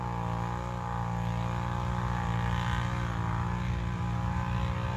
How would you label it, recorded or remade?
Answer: recorded